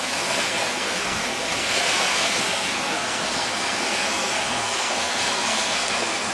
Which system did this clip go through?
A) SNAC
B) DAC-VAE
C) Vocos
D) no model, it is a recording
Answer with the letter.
A